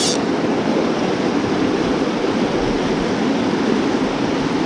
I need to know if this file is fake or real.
real